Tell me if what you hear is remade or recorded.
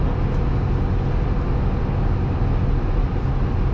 recorded